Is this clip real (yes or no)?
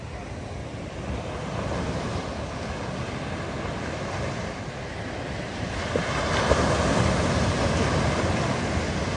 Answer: yes